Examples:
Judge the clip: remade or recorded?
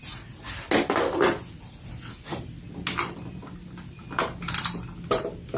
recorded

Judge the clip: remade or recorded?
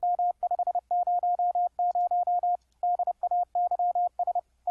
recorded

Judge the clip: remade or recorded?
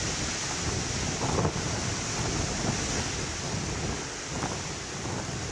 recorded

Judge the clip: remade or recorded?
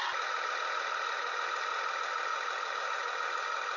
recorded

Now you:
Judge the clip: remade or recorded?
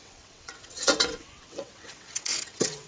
remade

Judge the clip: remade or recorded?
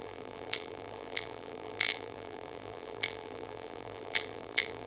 remade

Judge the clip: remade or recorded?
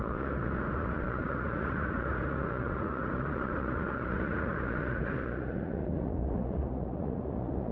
remade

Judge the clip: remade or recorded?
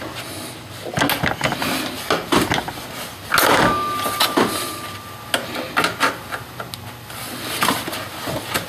recorded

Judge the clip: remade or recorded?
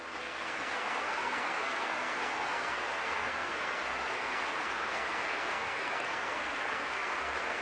remade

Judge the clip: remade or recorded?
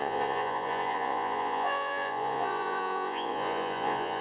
remade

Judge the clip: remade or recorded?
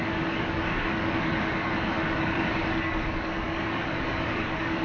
remade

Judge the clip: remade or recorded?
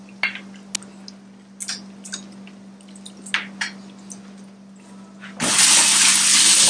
recorded